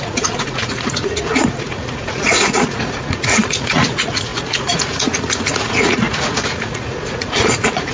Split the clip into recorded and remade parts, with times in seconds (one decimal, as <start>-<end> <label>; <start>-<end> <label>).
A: 0.0-7.9 remade